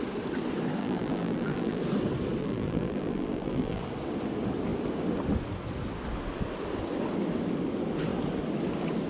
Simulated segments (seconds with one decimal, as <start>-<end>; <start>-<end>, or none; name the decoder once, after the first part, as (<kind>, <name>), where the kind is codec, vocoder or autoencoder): 0.8-1.8 (vocoder, BigVGAN v2); 2.4-3.8